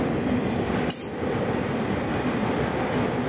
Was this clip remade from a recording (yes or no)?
no